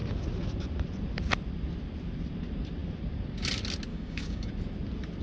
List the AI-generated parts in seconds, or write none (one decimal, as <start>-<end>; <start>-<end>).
3.9-4.5